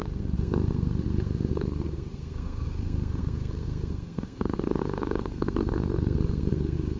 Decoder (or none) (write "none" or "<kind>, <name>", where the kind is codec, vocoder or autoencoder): codec, SNAC